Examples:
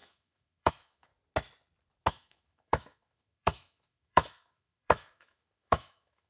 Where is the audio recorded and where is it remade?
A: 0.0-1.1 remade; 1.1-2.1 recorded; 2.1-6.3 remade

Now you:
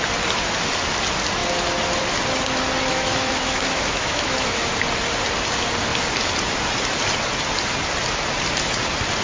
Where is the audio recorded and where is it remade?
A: 0.0-2.9 recorded; 2.9-4.7 remade; 4.7-9.2 recorded